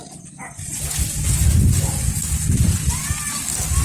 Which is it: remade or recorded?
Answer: recorded